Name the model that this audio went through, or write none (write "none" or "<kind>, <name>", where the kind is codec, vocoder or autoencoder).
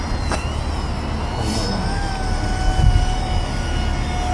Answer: none